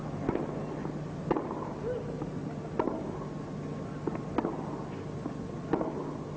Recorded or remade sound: recorded